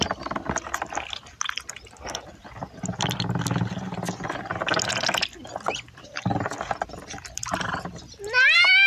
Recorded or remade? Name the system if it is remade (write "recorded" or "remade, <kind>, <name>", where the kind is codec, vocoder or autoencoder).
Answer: recorded